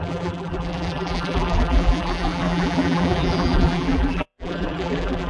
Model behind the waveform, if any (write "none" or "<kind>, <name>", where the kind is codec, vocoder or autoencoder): vocoder, BigVGAN v2